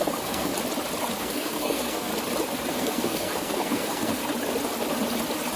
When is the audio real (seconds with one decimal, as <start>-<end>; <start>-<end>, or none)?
0.5-1.2; 2.1-2.7; 4.2-5.6